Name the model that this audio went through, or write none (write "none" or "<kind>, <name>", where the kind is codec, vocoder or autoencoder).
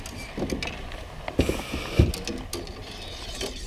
none